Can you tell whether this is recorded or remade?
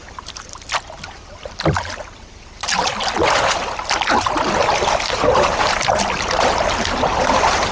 remade